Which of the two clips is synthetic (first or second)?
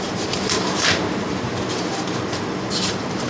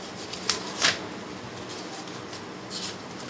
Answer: first